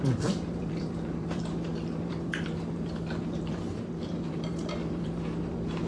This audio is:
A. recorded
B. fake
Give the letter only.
B